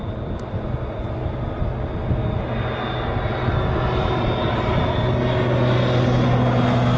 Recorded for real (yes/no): yes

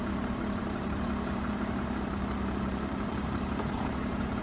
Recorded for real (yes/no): no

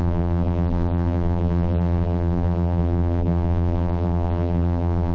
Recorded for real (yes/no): no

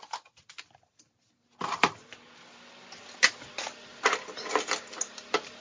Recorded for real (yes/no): yes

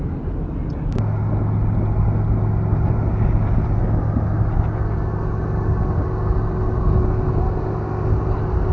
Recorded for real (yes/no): yes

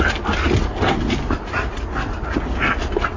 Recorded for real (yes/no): yes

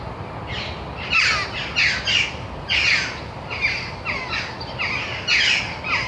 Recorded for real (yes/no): yes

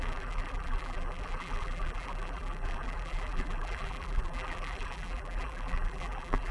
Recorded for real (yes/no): no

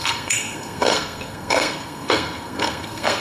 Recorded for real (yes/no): no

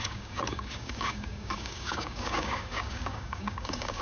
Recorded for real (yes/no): no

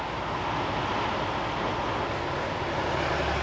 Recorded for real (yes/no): yes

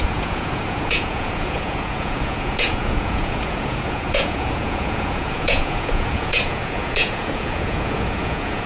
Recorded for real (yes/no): no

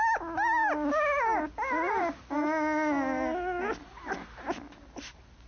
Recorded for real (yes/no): yes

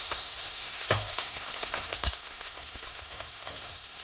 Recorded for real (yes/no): no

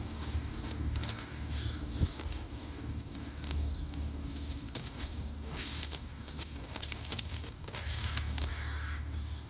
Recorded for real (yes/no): no